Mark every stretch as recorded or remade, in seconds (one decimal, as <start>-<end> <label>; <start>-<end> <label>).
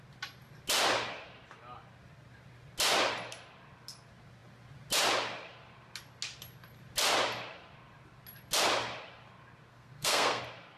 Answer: 0.0-9.7 recorded; 9.7-10.4 remade; 10.4-10.8 recorded